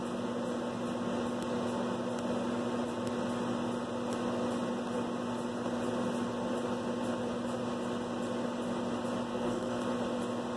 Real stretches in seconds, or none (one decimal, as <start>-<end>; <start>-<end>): 0.0-9.3; 9.8-10.6